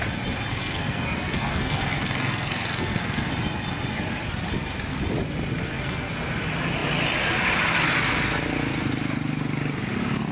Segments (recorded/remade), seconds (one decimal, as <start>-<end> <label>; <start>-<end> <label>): 0.0-0.5 recorded; 0.5-3.3 remade; 3.3-5.6 recorded; 5.6-6.1 remade; 6.1-10.3 recorded